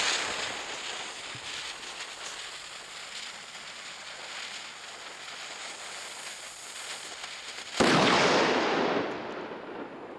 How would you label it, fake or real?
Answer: real